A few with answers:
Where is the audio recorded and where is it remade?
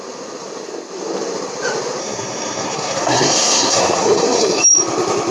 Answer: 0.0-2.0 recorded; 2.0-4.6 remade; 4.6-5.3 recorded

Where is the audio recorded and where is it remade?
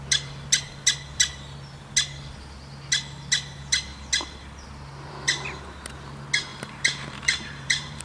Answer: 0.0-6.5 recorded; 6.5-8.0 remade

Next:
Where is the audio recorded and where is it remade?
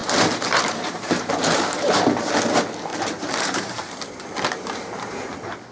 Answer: 0.0-2.0 remade; 2.0-2.9 recorded; 2.9-4.0 remade; 4.0-5.7 recorded